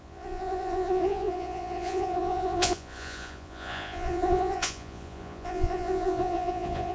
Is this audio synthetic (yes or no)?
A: yes